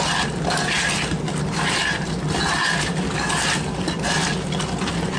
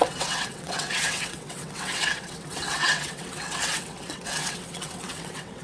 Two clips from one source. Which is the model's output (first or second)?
second